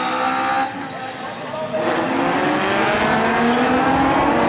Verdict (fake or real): real